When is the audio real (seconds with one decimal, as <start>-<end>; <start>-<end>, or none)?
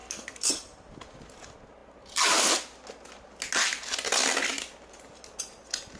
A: 0.5-6.0